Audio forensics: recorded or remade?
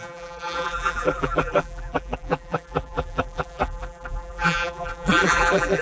remade